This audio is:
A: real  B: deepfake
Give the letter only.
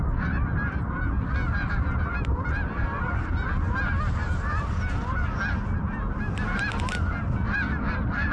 A